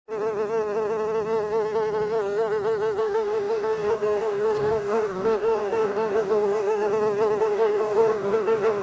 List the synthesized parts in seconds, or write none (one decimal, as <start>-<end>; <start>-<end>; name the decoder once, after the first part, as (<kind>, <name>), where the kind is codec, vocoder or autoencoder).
3.0-6.9 (codec, DAC); 7.4-8.8